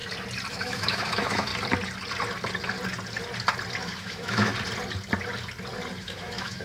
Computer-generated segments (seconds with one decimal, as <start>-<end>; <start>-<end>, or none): 0.5-1.5; 3.8-4.5; 6.0-6.6